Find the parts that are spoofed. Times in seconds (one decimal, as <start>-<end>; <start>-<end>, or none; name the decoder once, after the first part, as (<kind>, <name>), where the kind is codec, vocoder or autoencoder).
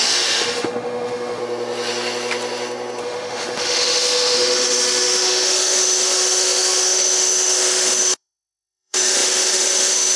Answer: 0.0-1.4 (autoencoder, DAC-VAE); 3.0-10.2